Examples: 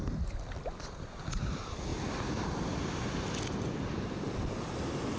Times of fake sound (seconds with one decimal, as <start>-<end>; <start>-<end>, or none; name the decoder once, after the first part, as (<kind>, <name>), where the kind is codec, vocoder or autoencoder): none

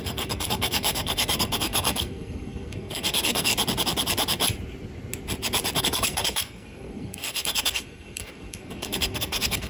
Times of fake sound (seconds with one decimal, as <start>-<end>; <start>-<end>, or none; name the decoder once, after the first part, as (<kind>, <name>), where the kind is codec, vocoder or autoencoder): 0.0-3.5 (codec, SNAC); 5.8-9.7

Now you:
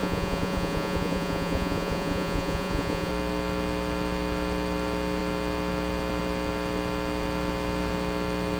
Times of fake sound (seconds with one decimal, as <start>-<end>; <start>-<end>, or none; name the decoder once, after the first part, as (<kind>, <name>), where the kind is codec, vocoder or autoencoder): 0.0-3.1 (vocoder, Vocos)

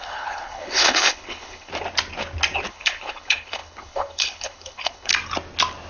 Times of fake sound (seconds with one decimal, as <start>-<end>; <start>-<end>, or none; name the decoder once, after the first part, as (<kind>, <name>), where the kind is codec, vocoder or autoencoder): 0.0-1.7 (codec, HILCodec); 2.7-5.1